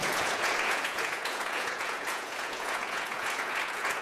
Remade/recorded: remade